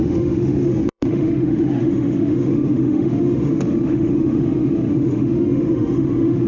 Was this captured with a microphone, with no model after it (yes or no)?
no